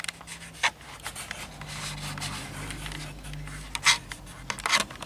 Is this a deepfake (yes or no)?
no